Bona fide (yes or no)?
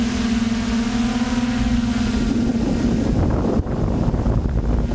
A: yes